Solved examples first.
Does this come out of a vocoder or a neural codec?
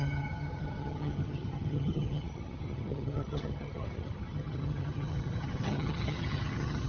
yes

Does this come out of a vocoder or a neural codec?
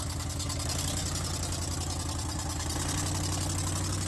no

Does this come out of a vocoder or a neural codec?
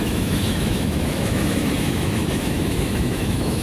yes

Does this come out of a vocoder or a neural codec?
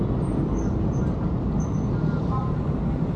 no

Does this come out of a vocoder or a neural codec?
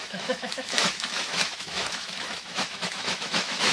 yes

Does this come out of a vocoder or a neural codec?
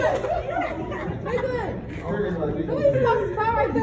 no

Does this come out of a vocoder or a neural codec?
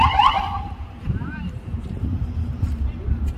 yes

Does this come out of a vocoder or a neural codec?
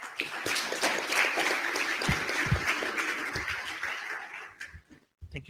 no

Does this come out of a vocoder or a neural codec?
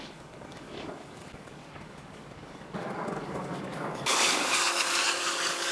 yes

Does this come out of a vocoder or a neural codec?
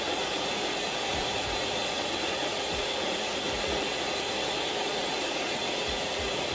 yes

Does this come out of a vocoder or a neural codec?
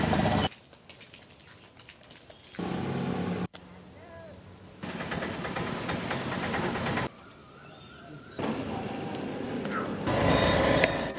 no